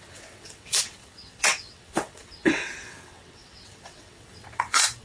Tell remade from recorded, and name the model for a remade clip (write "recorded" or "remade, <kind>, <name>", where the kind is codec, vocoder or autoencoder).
remade, vocoder, WaveNeXt